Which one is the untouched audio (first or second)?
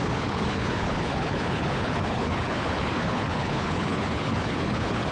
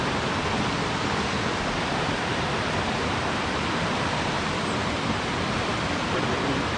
second